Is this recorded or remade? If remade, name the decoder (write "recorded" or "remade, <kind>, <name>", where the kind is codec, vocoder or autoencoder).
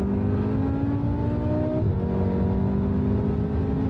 recorded